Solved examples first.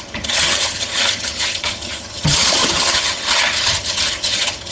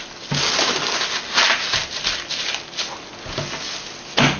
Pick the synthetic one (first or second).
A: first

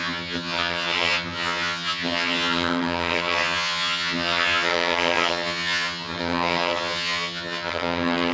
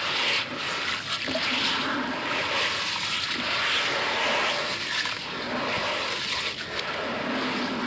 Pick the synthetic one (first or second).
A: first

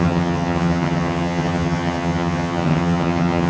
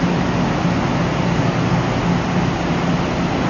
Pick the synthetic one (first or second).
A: first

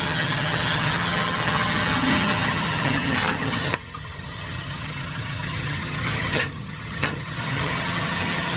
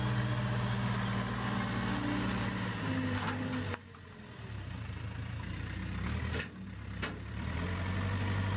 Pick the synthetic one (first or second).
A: first